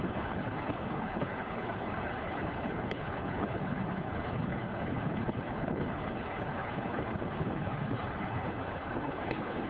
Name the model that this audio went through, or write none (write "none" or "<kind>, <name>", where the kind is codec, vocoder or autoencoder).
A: codec, HILCodec